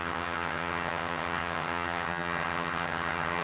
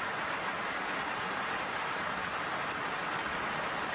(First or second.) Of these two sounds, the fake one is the first